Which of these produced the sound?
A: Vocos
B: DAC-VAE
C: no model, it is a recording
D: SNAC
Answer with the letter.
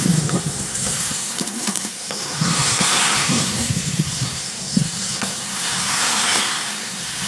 D